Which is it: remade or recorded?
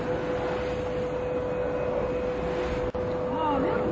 recorded